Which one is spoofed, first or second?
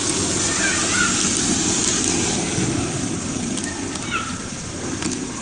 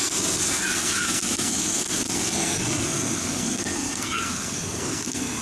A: second